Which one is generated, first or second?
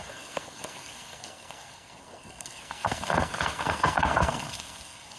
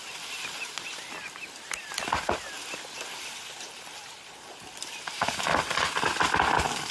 first